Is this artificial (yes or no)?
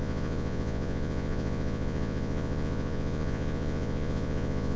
yes